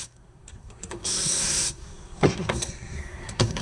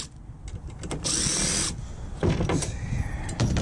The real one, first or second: second